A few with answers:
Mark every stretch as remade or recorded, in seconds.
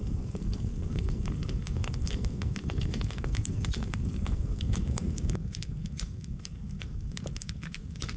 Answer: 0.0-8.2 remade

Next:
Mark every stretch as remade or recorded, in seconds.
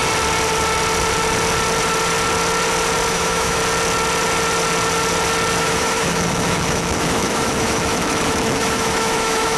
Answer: 0.0-3.1 recorded; 3.1-3.6 remade; 3.6-5.6 recorded; 5.6-9.6 remade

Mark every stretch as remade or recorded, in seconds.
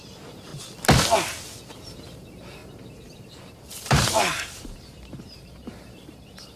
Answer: 0.0-0.5 remade; 0.5-1.8 recorded; 1.8-6.6 remade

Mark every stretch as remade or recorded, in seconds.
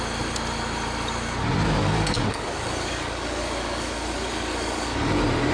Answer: 0.0-1.8 recorded; 1.8-5.1 remade; 5.1-5.5 recorded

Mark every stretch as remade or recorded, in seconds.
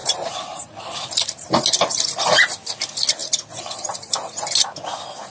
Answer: 0.0-0.8 remade; 0.8-5.3 recorded